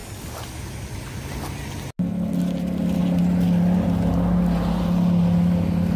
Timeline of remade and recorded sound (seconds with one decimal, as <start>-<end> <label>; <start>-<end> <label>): 0.0-6.0 recorded